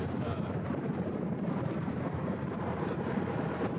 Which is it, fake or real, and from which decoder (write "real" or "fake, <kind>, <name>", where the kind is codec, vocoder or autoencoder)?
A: fake, vocoder, BigVGAN v2